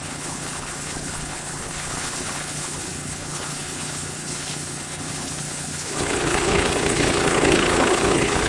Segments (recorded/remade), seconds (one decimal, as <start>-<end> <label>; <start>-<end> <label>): 0.0-8.5 remade

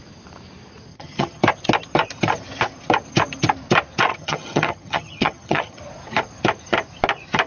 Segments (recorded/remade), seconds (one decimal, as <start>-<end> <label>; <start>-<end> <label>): 0.0-0.9 recorded; 0.9-1.4 remade; 1.4-4.1 recorded; 4.1-5.8 remade; 5.8-7.5 recorded

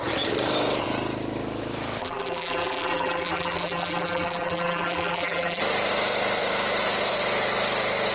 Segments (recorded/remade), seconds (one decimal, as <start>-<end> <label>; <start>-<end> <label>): 0.0-2.0 recorded; 2.0-5.6 remade; 5.6-8.1 recorded

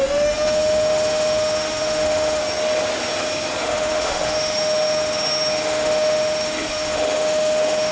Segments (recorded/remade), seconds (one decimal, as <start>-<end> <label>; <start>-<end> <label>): 0.0-2.4 remade; 2.4-3.6 recorded; 3.6-7.9 remade

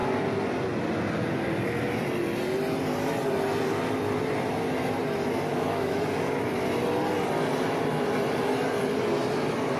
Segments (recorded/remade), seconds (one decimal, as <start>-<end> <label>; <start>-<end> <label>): 0.0-5.5 recorded; 5.5-6.0 remade; 6.0-9.8 recorded

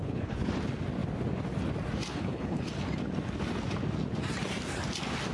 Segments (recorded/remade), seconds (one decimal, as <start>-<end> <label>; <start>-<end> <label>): 0.0-0.5 remade; 0.5-2.1 recorded; 2.1-2.6 remade; 2.6-5.3 recorded

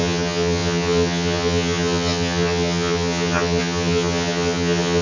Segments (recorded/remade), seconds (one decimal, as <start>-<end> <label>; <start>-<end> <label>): 0.0-5.0 remade

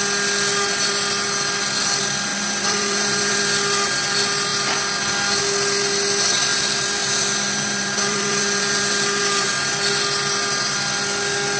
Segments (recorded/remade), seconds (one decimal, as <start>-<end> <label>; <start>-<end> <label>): 0.0-2.3 recorded; 2.3-3.4 remade; 3.4-6.5 recorded; 6.5-9.5 remade; 9.5-11.6 recorded